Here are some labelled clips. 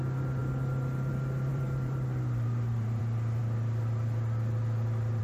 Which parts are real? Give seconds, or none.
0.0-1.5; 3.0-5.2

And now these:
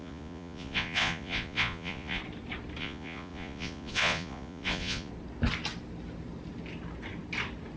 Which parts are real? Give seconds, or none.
2.2-2.8; 5.1-7.8

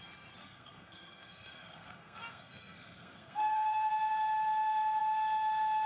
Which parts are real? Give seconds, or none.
0.0-0.4; 3.9-5.9

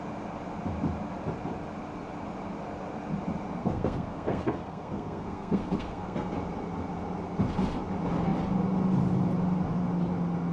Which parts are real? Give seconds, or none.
0.0-3.6; 6.3-10.5

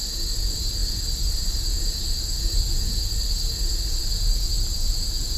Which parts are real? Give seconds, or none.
0.0-5.4